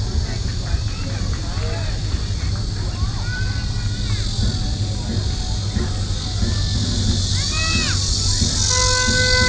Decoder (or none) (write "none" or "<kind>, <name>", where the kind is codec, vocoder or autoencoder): none